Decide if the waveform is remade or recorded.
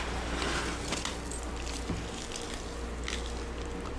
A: recorded